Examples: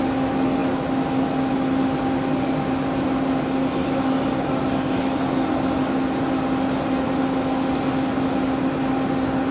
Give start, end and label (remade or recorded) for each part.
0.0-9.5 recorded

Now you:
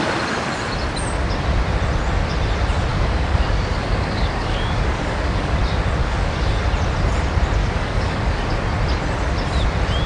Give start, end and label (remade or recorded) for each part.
0.0-2.9 recorded; 2.9-5.6 remade; 5.6-6.0 recorded; 6.0-6.6 remade; 6.6-7.6 recorded; 7.6-8.4 remade; 8.4-10.1 recorded

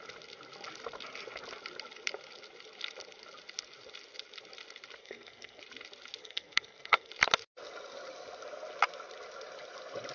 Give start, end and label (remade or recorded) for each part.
0.0-5.0 recorded; 5.0-5.6 remade; 5.6-6.2 recorded; 6.2-7.1 remade; 7.1-10.1 recorded

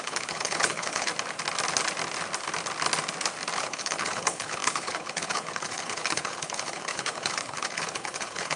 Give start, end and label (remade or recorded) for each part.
0.0-1.1 remade; 1.1-3.6 recorded; 3.6-8.6 remade

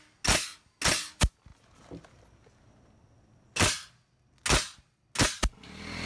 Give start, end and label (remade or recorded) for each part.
0.0-6.1 recorded

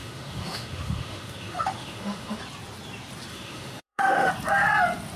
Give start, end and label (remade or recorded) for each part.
0.0-2.4 remade; 2.4-3.3 recorded; 3.3-4.3 remade; 4.3-5.2 recorded

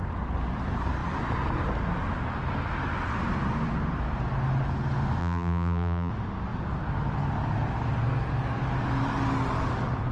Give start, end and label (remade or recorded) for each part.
0.0-5.2 recorded; 5.2-6.1 remade; 6.1-10.1 recorded

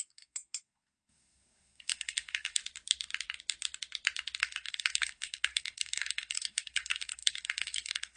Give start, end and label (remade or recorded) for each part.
0.0-2.6 remade; 2.6-4.4 recorded; 4.4-8.2 remade